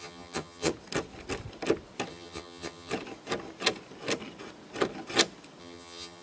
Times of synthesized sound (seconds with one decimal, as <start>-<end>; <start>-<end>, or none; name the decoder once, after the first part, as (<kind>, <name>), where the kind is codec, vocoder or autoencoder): 0.0-0.7 (vocoder, HiFi-GAN); 2.1-2.9; 5.6-6.2